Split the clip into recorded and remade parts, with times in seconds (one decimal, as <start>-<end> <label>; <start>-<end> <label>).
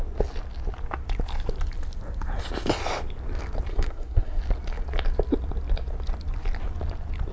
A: 0.0-3.7 recorded; 3.7-4.4 remade; 4.4-7.3 recorded